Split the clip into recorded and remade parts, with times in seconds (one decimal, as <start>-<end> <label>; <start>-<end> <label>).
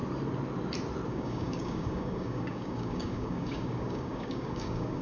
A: 0.0-1.1 recorded; 1.1-5.0 remade